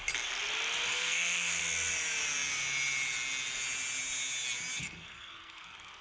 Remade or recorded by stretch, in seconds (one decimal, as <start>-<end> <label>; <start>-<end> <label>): 0.0-0.9 recorded; 0.9-1.6 remade; 1.6-4.8 recorded; 4.8-6.0 remade